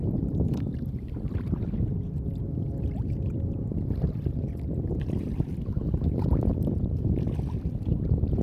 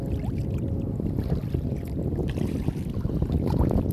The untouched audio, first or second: second